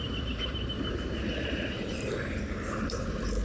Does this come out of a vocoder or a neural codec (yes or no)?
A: yes